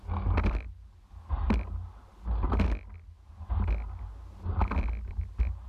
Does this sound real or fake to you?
real